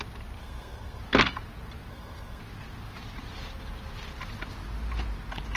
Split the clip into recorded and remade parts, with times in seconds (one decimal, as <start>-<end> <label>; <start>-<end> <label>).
0.0-0.4 recorded; 0.4-1.0 remade; 1.0-1.9 recorded; 1.9-2.4 remade; 2.4-5.6 recorded